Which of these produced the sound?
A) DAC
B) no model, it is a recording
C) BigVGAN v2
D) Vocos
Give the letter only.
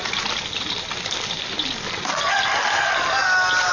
B